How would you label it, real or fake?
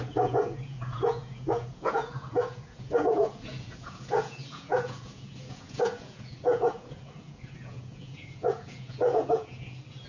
fake